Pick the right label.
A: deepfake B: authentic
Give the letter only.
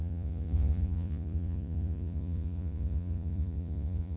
A